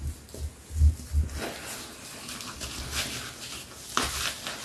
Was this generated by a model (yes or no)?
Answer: no